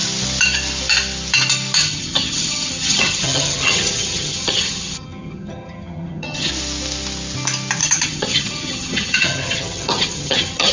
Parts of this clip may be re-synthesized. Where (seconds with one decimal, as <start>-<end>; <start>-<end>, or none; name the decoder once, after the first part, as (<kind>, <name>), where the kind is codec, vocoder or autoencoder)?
1.8-6.5 (vocoder, HiFi-GAN); 7.8-10.7